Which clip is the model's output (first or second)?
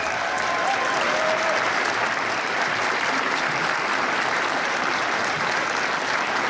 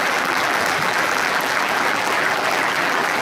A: second